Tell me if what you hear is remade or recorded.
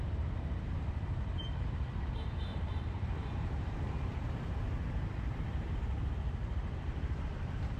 remade